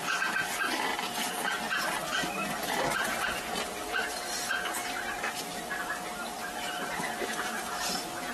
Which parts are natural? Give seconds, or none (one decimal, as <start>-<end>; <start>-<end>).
0.0-8.3